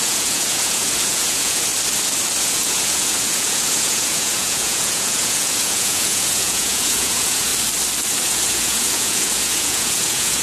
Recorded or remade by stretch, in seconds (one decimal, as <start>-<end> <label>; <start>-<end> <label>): 0.0-1.7 remade; 1.7-2.4 recorded; 2.4-7.5 remade; 7.5-8.3 recorded; 8.3-10.4 remade